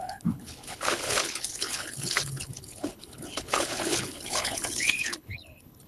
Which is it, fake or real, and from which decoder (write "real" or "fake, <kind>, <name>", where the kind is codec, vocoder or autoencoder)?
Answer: fake, codec, HILCodec